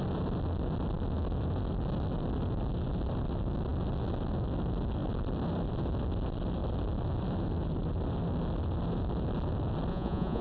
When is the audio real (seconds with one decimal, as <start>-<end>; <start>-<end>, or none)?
0.0-9.9